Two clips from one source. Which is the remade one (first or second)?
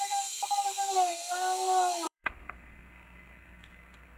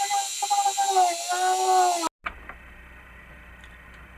first